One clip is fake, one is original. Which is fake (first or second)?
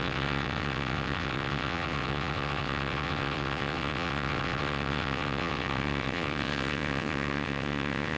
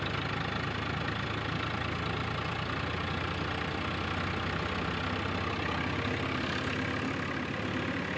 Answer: first